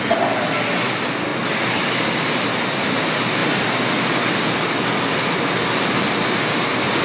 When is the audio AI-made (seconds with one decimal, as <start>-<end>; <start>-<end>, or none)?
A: none